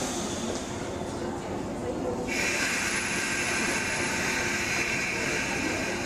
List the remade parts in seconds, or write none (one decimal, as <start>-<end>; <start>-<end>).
none